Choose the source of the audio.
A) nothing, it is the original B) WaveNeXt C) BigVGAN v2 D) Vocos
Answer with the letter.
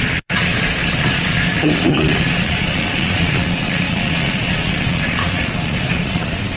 D